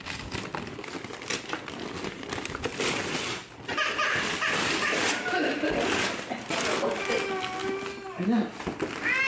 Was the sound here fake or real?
real